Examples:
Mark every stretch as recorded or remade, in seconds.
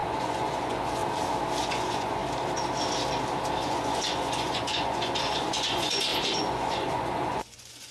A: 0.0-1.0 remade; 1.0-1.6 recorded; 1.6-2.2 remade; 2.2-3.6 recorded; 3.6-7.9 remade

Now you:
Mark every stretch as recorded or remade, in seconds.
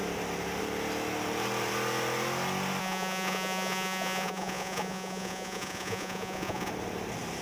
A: 0.0-2.8 recorded; 2.8-6.7 remade; 6.7-7.4 recorded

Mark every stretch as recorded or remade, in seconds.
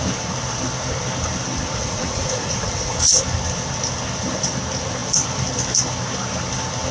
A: 0.0-1.8 recorded; 1.8-3.2 remade; 3.2-6.9 recorded